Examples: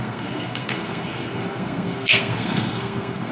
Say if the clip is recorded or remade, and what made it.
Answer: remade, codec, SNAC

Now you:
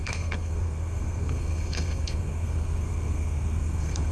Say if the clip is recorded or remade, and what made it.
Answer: remade, codec, SNAC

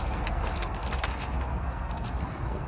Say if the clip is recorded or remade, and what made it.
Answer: remade, codec, SNAC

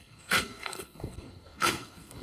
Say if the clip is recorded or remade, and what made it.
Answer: remade, codec, SNAC